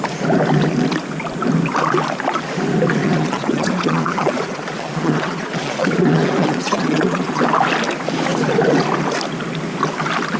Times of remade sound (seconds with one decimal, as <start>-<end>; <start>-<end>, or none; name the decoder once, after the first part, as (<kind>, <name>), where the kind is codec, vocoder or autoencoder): 3.0-7.4 (vocoder, Vocos)